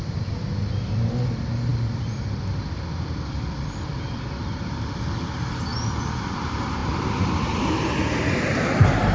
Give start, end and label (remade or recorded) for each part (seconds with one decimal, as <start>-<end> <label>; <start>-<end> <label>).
0.0-0.5 recorded; 0.5-5.7 remade; 5.7-6.2 recorded; 6.2-9.1 remade